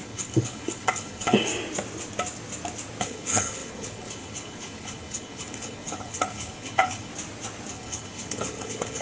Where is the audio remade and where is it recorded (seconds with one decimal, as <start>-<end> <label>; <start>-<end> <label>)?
0.0-1.5 remade; 1.5-3.0 recorded; 3.0-7.1 remade; 7.1-7.7 recorded; 7.7-9.0 remade